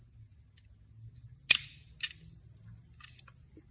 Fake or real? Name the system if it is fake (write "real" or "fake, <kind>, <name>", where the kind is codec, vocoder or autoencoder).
real